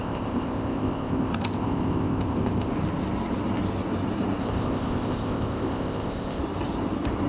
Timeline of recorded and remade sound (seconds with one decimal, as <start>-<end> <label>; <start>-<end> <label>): 0.0-2.7 remade; 2.7-4.4 recorded; 4.4-6.4 remade; 6.4-7.3 recorded